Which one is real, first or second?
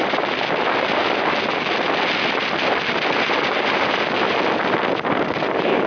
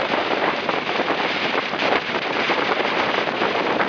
first